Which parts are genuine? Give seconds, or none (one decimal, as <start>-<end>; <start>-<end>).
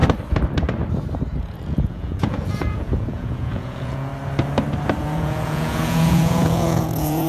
0.0-1.4; 4.1-5.0